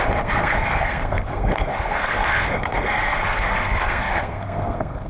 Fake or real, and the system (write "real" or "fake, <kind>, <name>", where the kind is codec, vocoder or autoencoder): fake, codec, SNAC